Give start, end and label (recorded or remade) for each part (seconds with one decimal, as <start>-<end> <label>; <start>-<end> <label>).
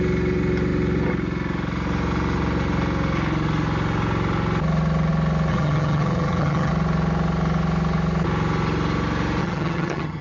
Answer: 0.0-5.5 recorded; 5.5-6.7 remade; 6.7-9.4 recorded; 9.4-10.2 remade